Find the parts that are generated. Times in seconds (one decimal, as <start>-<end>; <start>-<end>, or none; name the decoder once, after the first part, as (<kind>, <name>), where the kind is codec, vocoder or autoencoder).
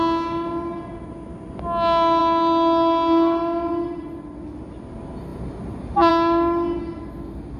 none